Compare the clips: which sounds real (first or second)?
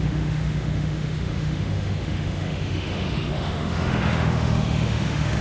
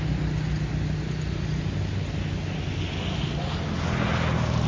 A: second